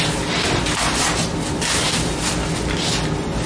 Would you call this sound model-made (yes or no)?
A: no